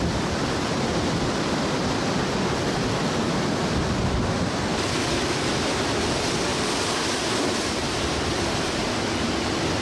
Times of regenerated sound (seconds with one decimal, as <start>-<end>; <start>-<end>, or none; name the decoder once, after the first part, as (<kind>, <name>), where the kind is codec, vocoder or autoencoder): 6.5-8.1 (vocoder, BigVGAN v2)